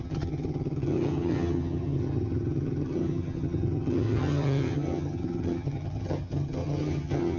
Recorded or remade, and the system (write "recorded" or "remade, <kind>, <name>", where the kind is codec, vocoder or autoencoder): remade, vocoder, HiFi-GAN